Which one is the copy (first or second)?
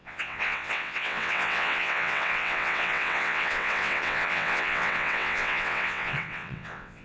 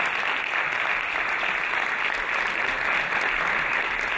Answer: first